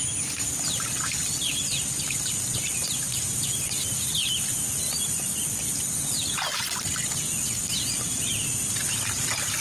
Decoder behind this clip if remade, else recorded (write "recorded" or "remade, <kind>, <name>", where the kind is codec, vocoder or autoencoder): recorded